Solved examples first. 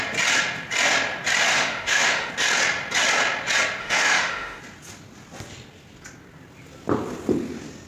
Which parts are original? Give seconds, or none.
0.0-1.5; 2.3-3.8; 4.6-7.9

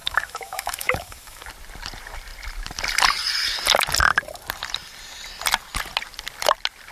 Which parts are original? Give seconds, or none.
1.5-6.9

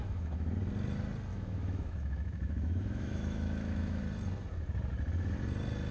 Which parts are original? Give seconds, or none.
0.5-1.3; 4.0-5.9